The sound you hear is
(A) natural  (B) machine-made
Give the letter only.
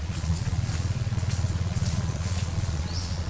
B